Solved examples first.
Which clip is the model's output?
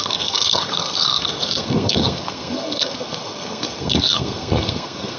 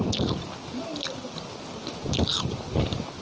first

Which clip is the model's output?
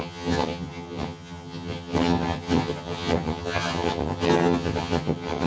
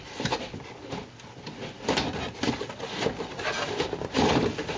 first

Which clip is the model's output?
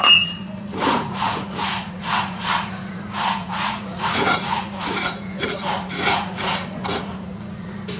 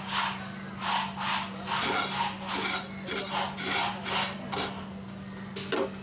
first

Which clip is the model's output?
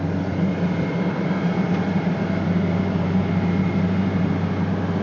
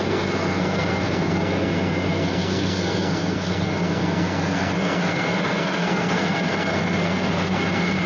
second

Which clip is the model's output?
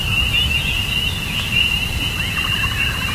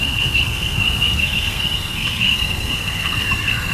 second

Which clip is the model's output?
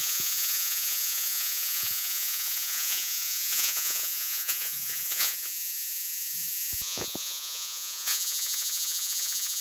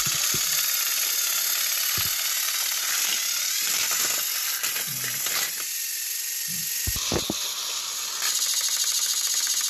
first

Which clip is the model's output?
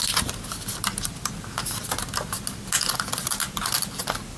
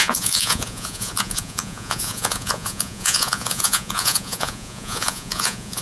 second